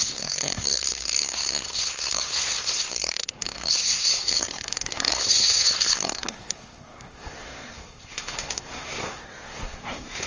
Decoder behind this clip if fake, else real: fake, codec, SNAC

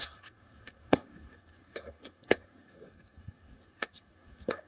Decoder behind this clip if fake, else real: fake, codec, SNAC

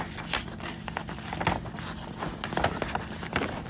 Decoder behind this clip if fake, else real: real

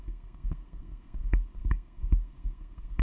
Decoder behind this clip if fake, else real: fake, codec, SNAC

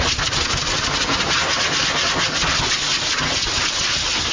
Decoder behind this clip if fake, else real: real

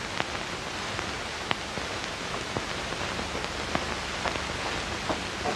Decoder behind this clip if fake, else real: real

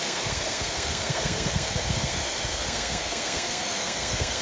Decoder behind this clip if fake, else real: fake, codec, SNAC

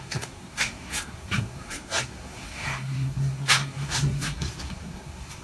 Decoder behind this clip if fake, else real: fake, codec, SNAC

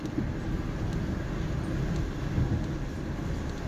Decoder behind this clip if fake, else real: real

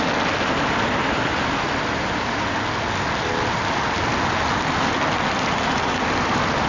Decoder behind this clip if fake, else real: real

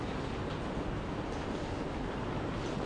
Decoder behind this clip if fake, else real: real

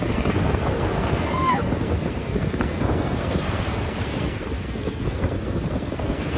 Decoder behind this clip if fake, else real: fake, codec, SNAC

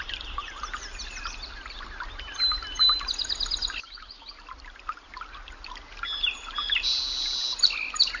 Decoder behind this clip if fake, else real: real